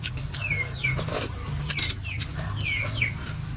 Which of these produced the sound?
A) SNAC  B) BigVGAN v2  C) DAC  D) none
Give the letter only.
D